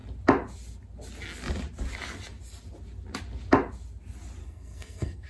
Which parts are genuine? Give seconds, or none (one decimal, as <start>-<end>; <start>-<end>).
0.0-4.4